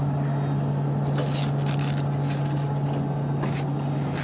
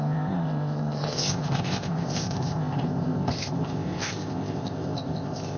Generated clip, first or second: second